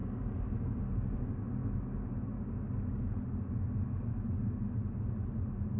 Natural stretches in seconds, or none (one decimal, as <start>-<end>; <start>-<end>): 0.8-5.8